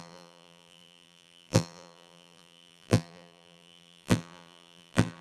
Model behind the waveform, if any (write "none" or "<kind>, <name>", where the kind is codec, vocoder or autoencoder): vocoder, BigVGAN v2